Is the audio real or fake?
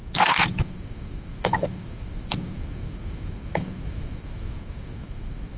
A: fake